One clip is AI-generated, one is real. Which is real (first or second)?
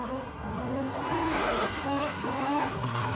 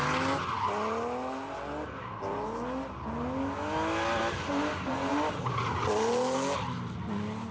second